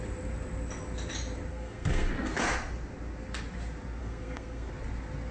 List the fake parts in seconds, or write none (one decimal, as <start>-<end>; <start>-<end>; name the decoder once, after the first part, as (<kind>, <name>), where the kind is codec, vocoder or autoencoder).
1.5-2.1 (codec, SNAC); 4.0-4.7